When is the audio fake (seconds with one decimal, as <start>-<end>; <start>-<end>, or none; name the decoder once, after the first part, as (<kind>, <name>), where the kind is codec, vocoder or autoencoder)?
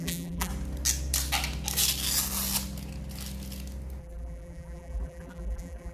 0.0-0.5 (vocoder, BigVGAN v2); 4.0-5.9